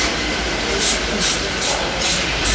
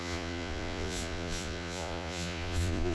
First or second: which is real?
first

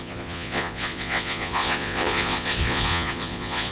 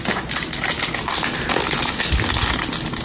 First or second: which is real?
second